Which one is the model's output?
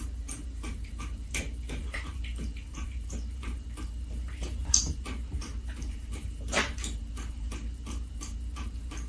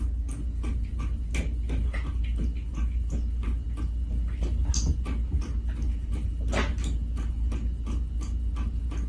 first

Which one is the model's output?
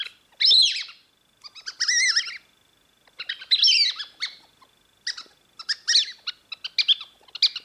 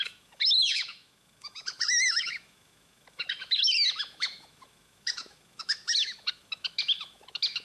second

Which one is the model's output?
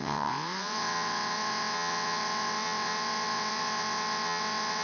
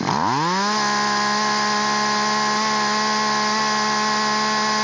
first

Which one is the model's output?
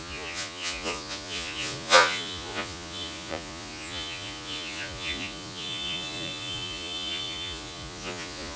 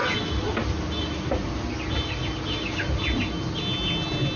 first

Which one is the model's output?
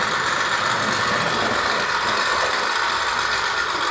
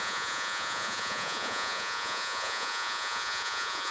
second